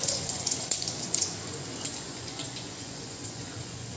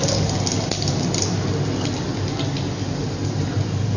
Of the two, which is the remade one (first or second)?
first